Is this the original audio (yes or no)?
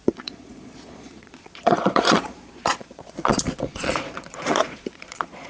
no